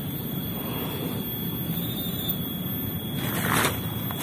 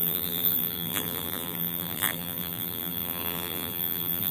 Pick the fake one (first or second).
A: second